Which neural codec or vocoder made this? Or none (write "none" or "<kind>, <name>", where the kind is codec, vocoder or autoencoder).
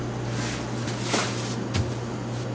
none